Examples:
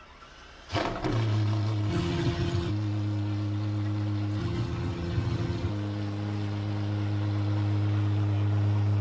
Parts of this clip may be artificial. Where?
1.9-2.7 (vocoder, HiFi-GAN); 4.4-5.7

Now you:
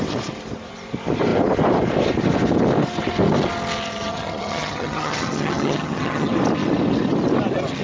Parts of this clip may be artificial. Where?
4.1-6.3 (vocoder, HiFi-GAN)

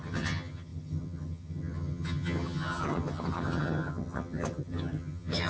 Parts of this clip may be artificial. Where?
0.0-5.5 (vocoder, HiFi-GAN)

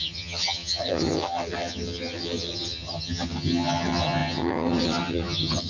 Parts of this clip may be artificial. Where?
0.0-5.7 (vocoder, HiFi-GAN)

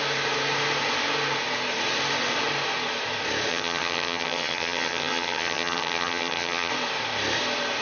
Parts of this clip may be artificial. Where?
3.5-6.7 (vocoder, HiFi-GAN)